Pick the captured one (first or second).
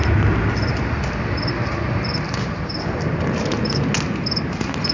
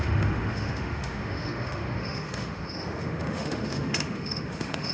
first